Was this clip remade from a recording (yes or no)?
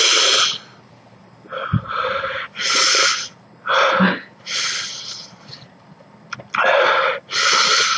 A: yes